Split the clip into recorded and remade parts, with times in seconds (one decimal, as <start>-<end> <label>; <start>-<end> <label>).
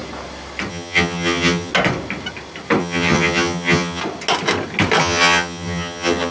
0.0-0.7 recorded; 0.7-1.7 remade; 1.7-2.8 recorded; 2.8-4.0 remade; 4.0-5.0 recorded; 5.0-6.3 remade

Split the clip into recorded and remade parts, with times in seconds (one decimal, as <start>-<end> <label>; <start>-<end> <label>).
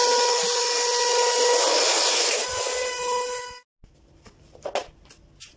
0.0-5.6 recorded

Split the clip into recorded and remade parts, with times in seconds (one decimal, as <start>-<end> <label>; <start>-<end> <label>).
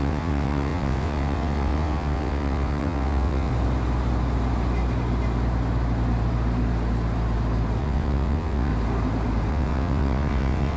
0.0-3.5 remade; 3.5-7.8 recorded; 7.8-8.7 remade; 8.7-9.5 recorded; 9.5-10.8 remade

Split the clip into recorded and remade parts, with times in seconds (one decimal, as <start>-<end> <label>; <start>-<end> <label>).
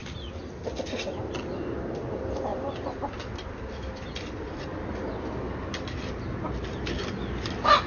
0.0-7.9 recorded